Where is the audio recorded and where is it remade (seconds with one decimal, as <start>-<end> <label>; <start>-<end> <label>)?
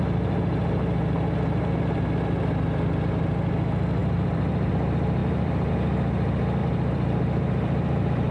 0.0-4.0 recorded; 4.0-4.7 remade; 4.7-5.2 recorded; 5.2-5.7 remade; 5.7-6.6 recorded; 6.6-8.3 remade